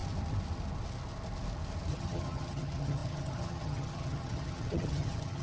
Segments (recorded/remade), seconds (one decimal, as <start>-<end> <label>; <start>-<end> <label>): 0.0-1.9 recorded; 1.9-5.4 remade